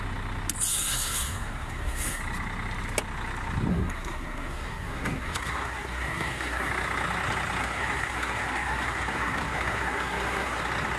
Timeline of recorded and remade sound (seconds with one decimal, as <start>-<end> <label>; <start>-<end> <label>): 0.0-0.7 recorded; 0.7-2.2 remade; 2.2-3.7 recorded; 3.7-6.7 remade; 6.7-7.6 recorded; 7.6-10.6 remade; 10.6-11.0 recorded